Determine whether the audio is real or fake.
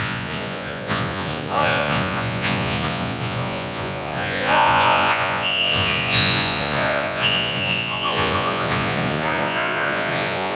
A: fake